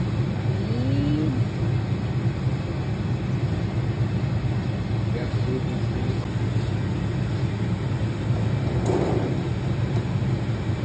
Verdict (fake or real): real